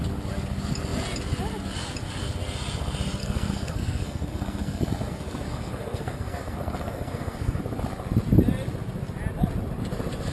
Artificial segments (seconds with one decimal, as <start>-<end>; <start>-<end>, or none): 3.2-7.6